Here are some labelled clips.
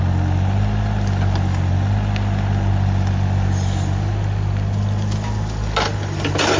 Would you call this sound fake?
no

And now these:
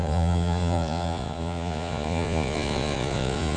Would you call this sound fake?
yes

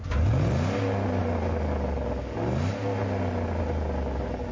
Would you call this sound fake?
no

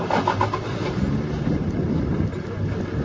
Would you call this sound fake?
no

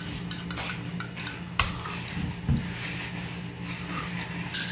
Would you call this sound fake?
no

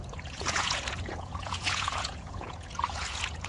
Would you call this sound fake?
yes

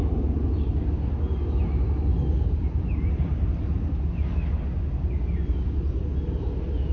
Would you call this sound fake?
no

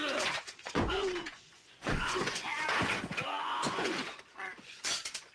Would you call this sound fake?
yes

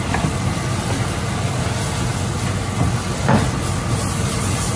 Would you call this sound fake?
no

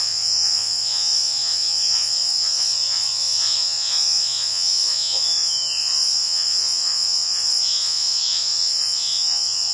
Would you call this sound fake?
yes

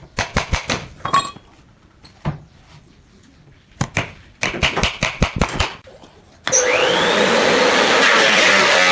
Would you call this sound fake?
no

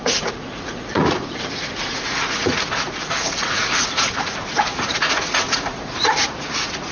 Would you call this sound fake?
yes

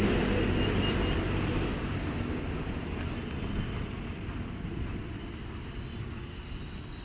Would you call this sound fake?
no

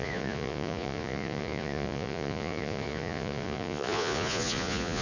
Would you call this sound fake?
yes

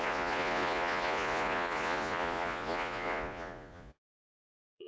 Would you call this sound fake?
yes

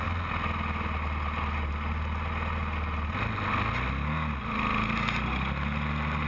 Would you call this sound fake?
no